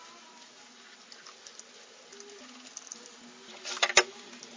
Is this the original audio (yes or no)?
yes